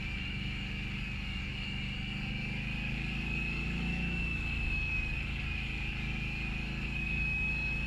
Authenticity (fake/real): fake